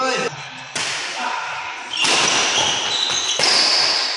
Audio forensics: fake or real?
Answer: real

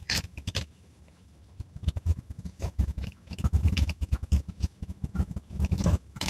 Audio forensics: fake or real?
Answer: fake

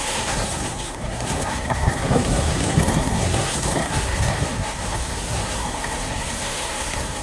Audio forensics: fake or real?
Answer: fake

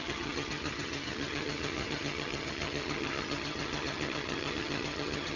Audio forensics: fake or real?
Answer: fake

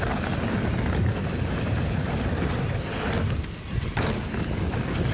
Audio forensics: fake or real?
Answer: real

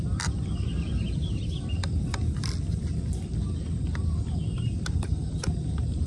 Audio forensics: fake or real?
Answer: fake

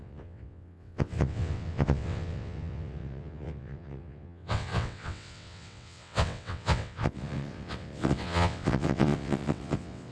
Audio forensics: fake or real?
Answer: fake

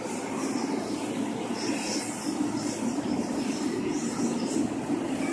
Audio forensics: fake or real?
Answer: real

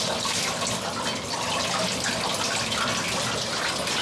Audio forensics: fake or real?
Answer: real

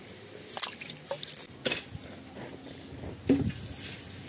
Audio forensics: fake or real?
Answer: real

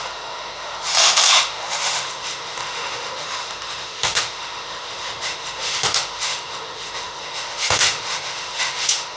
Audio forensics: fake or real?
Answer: fake